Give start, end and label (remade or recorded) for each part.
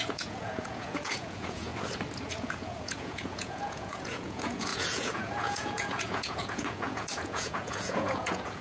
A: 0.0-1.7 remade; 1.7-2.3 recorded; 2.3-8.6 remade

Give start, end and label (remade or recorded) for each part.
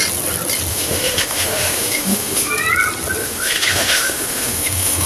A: 0.0-0.7 recorded; 0.7-2.5 remade; 2.5-3.2 recorded; 3.2-5.1 remade